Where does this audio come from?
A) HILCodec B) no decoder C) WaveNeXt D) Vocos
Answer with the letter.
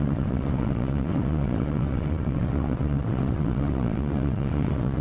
C